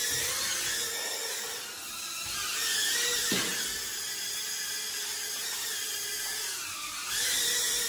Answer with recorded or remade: recorded